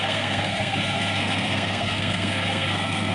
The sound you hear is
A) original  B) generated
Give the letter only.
B